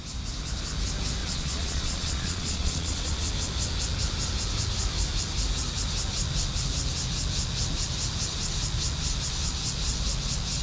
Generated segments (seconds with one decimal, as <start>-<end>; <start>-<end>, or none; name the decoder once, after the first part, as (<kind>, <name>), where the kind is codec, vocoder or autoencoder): 1.2-3.3 (vocoder, Vocos)